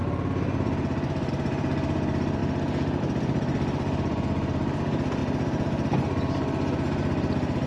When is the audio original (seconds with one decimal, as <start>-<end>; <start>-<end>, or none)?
2.4-3.0; 5.2-7.7